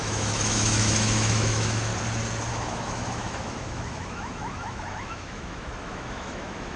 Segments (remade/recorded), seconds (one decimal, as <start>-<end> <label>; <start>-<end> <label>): 0.0-1.9 remade; 1.9-2.5 recorded; 2.5-6.8 remade